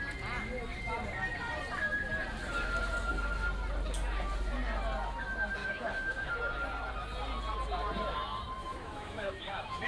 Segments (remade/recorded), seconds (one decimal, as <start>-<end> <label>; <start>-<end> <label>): 0.0-5.6 recorded; 5.6-6.3 remade; 6.3-8.6 recorded; 8.6-9.9 remade